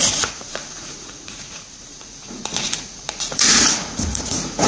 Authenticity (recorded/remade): remade